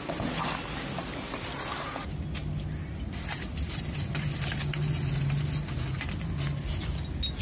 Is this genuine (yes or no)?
yes